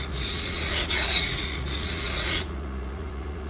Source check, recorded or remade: remade